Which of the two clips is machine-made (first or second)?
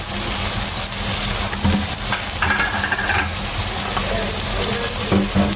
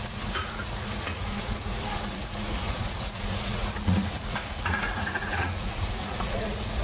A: second